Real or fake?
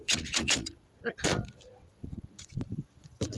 fake